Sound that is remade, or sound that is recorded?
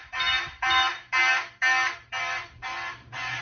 remade